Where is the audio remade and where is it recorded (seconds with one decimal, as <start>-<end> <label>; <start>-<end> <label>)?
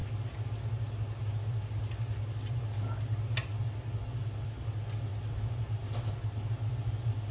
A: 0.0-7.3 recorded